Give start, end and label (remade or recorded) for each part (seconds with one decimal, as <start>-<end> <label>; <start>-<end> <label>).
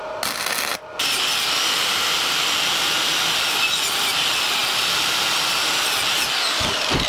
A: 0.0-4.6 recorded; 4.6-5.7 remade; 5.7-7.1 recorded